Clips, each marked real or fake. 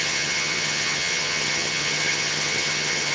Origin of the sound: fake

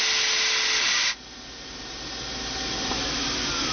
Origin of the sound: real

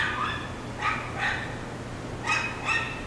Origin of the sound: real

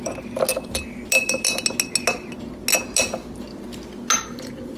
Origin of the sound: real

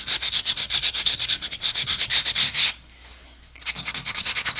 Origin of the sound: fake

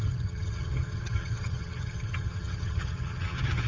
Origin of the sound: fake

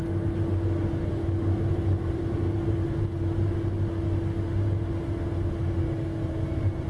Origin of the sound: real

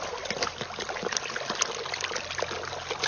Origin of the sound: real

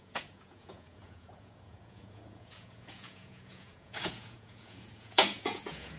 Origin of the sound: fake